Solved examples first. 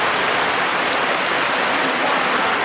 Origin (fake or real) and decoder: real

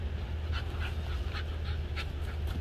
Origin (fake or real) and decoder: real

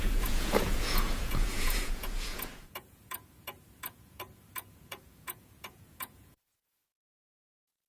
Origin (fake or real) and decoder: fake, vocoder, Vocos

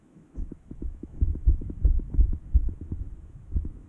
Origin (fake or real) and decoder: fake, autoencoder, DAC-VAE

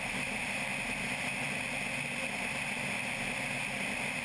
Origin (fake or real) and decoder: real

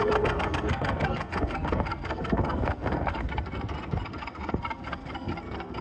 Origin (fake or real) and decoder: fake, codec, SNAC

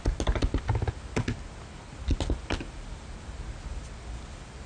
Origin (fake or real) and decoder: real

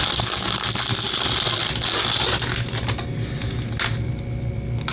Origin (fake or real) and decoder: real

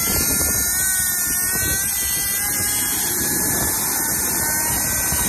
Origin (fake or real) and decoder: real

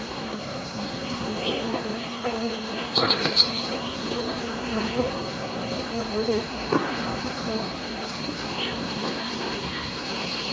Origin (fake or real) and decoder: fake, codec, SNAC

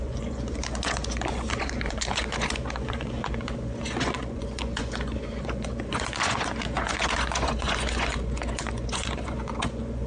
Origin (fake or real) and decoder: fake, vocoder, Vocos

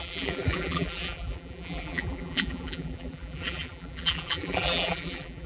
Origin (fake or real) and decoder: fake, vocoder, BigVGAN v2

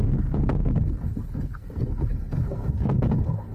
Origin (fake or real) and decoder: fake, codec, SNAC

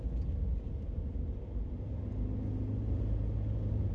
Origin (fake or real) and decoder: real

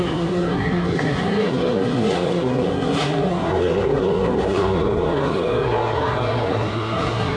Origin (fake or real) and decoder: fake, codec, SNAC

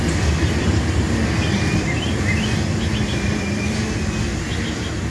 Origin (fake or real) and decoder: real